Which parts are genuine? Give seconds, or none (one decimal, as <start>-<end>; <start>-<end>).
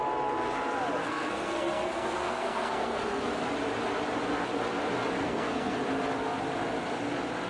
0.0-1.0; 3.2-5.2; 5.8-7.5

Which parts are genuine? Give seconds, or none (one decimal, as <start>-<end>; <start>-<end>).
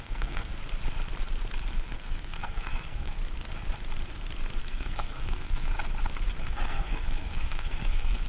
0.5-1.7; 3.2-4.6; 5.7-6.4